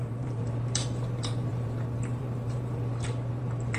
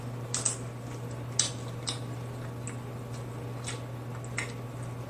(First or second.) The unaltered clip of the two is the second